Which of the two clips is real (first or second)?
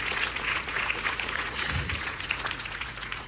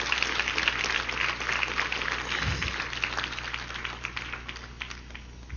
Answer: second